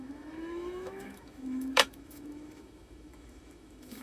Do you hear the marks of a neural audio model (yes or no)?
yes